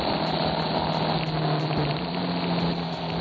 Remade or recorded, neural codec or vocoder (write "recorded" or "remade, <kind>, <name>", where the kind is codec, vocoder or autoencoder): recorded